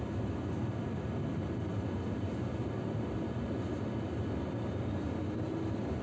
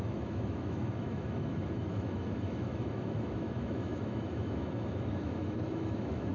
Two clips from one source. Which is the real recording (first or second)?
first